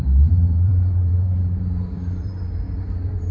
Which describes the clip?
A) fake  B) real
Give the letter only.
A